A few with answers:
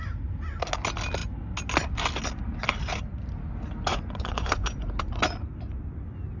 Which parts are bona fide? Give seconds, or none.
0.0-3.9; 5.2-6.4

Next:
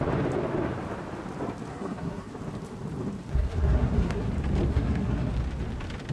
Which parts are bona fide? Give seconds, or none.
0.0-1.7; 2.3-3.3; 4.3-4.7; 5.3-6.1

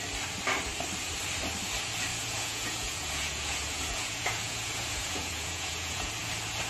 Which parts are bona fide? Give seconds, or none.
0.0-2.1; 6.1-6.7

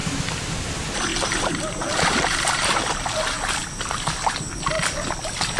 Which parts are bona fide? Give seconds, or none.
0.7-1.1; 2.8-5.6

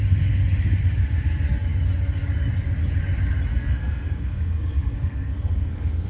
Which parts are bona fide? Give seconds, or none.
0.0-3.5

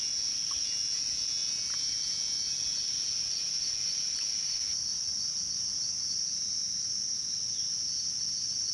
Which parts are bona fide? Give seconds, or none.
0.0-8.7